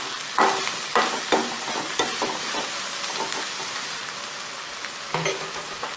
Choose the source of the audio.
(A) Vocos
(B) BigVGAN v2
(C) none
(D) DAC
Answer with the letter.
B